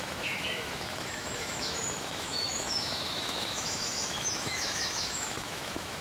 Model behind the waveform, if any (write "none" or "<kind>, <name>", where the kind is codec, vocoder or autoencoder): autoencoder, DAC-VAE